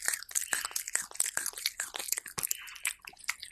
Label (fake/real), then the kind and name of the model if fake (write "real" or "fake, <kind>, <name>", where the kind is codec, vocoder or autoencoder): real